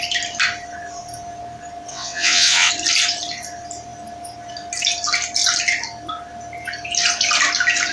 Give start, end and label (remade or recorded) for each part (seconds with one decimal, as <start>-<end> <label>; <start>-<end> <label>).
0.0-1.9 recorded; 1.9-2.7 remade; 2.7-7.9 recorded

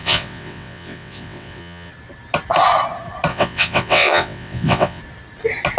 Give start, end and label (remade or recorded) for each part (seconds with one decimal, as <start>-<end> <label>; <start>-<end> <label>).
0.0-1.9 remade; 1.9-3.3 recorded; 3.3-5.0 remade; 5.0-5.8 recorded